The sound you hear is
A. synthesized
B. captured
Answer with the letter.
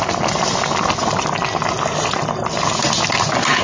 B